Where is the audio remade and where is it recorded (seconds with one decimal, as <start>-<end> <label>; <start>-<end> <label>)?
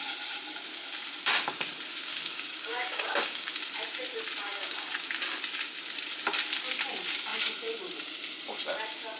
0.0-2.1 recorded; 2.1-3.6 remade; 3.6-4.4 recorded; 4.4-4.9 remade; 4.9-9.2 recorded